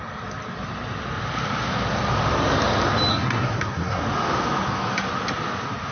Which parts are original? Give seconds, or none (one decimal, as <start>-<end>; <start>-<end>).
0.0-3.1; 4.0-5.9